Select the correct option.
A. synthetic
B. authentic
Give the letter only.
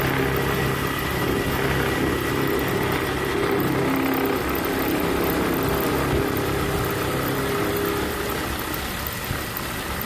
B